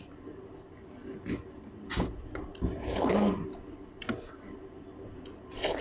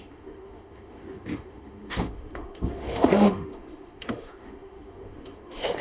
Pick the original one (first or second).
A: first